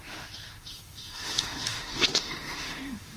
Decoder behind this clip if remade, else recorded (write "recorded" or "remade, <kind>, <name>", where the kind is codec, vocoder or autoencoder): remade, autoencoder, DAC-VAE